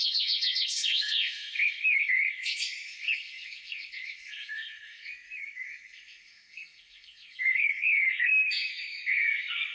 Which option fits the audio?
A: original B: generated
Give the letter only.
B